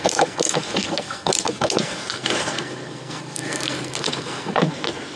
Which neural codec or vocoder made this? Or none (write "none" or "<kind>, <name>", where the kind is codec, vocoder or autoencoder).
codec, SNAC